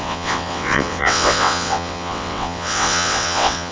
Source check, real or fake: fake